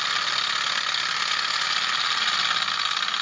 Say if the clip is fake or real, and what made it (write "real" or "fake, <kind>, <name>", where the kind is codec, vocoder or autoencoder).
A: real